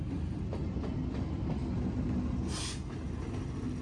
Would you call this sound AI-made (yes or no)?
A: no